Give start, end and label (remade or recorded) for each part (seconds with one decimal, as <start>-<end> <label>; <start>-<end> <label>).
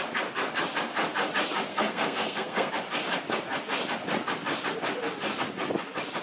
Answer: 0.0-1.7 recorded; 1.7-2.7 remade; 2.7-6.2 recorded